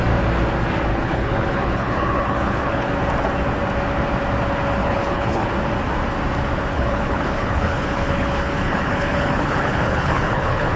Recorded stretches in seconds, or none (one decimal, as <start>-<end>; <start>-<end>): 0.0-0.9; 2.9-4.8; 5.5-6.7